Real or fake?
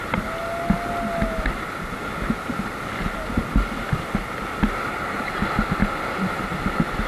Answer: real